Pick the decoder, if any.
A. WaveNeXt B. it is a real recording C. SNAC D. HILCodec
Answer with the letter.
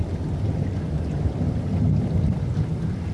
B